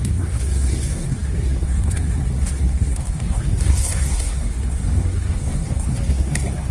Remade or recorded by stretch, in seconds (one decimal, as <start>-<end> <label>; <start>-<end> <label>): 0.0-6.7 remade